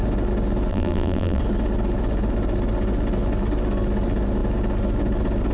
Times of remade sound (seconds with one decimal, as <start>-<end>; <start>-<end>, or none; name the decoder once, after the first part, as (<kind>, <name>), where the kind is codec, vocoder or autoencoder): 0.7-1.4 (vocoder, BigVGAN v2)